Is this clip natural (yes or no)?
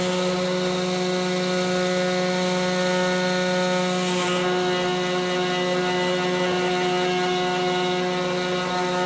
yes